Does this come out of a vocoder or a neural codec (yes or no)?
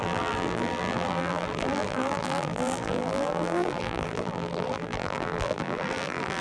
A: yes